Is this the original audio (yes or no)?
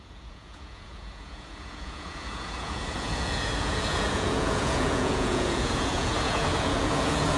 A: no